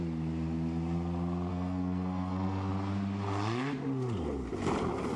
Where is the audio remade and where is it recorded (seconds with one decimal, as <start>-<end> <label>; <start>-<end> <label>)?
0.0-1.5 recorded; 1.5-2.7 remade; 2.7-5.2 recorded